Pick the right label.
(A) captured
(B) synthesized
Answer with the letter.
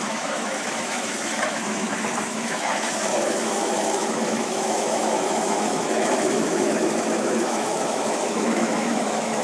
B